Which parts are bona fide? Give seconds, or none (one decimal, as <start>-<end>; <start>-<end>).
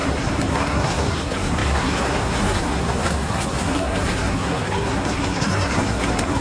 none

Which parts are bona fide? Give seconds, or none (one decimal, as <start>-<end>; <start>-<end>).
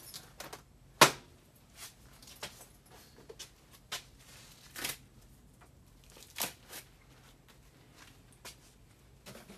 0.0-9.6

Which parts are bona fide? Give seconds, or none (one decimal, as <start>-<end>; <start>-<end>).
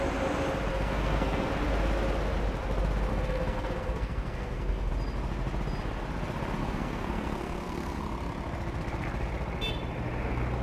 0.0-0.7; 1.5-3.1; 4.9-6.6; 8.0-10.6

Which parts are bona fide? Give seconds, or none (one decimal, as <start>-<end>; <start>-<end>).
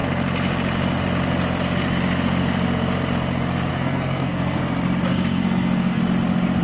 0.0-3.7; 4.6-5.1; 6.0-6.6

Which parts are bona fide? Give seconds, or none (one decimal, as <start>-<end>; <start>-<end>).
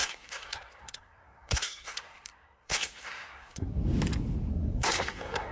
3.8-4.5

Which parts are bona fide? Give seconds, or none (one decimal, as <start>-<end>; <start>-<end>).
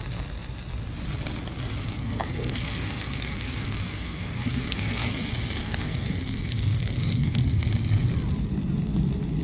0.0-1.8; 5.1-5.6; 7.4-9.4